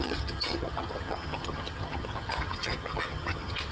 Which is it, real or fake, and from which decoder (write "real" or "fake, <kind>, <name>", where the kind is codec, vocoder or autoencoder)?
fake, vocoder, HiFi-GAN